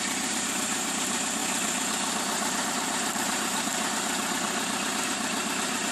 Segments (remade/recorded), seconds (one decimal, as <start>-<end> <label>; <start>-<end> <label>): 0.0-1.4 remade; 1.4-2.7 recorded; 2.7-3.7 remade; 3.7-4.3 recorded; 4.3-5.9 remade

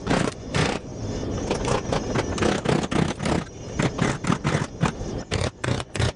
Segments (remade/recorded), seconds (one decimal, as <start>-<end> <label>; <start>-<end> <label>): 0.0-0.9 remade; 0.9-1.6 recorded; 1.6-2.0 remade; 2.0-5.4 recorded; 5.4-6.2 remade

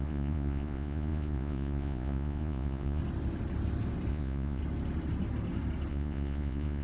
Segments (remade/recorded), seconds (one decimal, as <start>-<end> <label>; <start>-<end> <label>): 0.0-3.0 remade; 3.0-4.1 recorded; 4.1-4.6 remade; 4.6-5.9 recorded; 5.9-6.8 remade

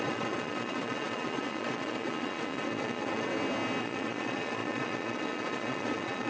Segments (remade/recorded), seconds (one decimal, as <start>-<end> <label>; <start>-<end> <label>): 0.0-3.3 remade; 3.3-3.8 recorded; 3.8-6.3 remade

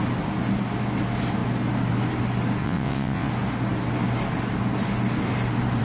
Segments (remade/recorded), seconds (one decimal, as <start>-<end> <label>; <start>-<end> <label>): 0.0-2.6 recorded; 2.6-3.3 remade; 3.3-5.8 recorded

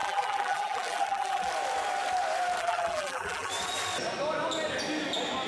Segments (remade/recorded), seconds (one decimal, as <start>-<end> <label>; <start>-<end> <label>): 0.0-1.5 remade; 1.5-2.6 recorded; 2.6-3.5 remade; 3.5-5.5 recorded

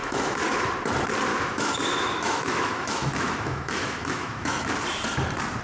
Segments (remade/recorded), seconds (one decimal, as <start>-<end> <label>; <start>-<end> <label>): 0.0-0.7 remade; 0.7-1.3 recorded; 1.3-4.7 remade; 4.7-5.6 recorded